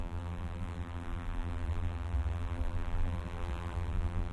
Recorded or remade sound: remade